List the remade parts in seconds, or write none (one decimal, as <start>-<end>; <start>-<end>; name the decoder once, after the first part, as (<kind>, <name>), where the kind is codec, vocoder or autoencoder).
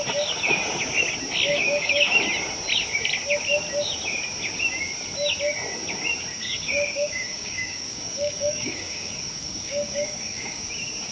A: 1.5-2.2 (codec, DAC); 6.3-10.7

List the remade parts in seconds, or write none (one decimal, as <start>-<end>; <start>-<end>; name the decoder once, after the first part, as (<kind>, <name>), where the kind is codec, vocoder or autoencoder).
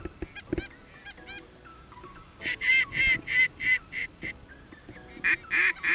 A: 1.7-2.8 (codec, DAC)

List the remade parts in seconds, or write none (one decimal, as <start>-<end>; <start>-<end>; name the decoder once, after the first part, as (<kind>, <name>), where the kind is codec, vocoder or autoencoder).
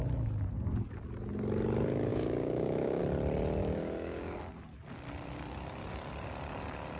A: 2.1-3.0 (codec, DAC); 3.6-4.4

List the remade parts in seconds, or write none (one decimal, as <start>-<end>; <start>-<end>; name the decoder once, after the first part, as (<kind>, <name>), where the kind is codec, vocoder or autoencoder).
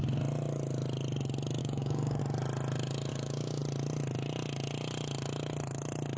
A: 1.6-2.2 (codec, DAC); 3.1-3.6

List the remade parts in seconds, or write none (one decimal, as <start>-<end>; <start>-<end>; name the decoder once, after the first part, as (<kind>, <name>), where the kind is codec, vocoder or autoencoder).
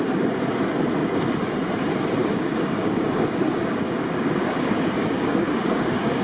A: 2.2-6.2 (codec, DAC)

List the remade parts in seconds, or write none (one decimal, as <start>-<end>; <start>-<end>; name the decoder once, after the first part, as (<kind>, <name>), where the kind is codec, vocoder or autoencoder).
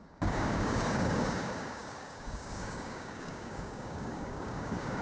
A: 0.0-5.0 (codec, DAC)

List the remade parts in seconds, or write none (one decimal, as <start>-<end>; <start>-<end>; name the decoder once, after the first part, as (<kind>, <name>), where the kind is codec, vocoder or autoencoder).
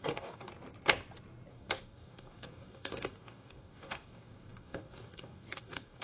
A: 0.0-0.5 (codec, DAC); 1.5-6.0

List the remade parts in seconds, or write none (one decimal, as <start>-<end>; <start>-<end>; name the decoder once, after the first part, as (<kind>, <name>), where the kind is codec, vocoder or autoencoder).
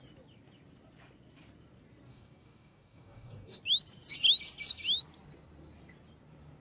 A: 2.1-3.6 (codec, DAC)